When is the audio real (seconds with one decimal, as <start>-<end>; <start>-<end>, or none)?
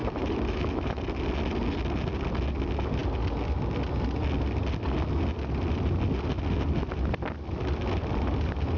1.0-8.8